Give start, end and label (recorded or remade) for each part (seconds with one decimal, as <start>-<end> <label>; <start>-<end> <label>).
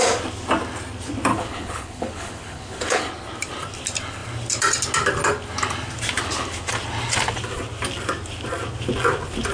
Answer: 0.0-1.3 recorded; 1.3-3.1 remade; 3.1-9.5 recorded